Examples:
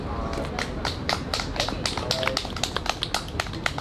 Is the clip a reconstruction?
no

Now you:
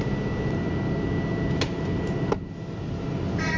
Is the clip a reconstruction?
no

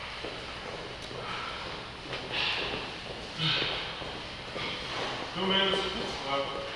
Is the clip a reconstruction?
no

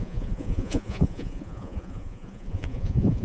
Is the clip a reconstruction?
yes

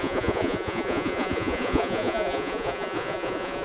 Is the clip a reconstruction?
yes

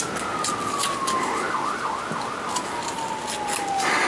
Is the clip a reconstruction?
no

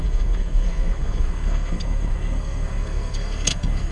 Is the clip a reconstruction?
yes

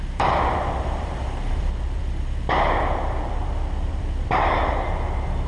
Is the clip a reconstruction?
yes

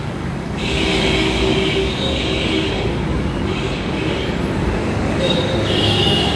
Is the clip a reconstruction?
yes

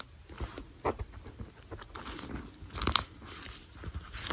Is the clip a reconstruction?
no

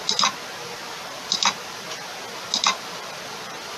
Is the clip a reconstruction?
no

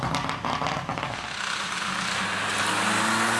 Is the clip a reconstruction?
no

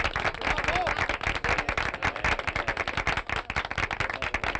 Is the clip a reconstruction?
no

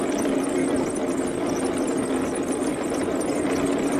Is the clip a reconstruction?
no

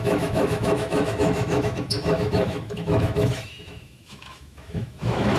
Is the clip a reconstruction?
yes